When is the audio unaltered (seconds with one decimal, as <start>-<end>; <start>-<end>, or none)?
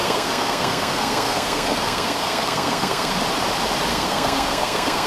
3.1-3.9